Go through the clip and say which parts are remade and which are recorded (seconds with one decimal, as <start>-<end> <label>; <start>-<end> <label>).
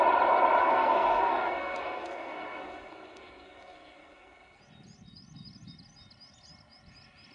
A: 0.0-0.6 recorded; 0.6-4.6 remade; 4.6-7.3 recorded